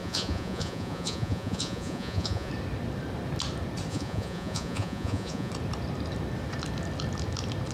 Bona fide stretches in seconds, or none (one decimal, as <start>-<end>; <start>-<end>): 2.5-3.9; 5.5-7.7